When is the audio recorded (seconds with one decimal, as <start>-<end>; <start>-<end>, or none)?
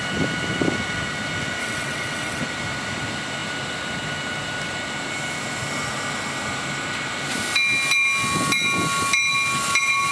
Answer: 0.0-1.6; 2.4-10.1